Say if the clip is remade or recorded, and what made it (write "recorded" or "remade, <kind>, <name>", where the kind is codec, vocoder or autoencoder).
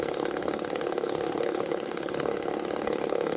remade, codec, SNAC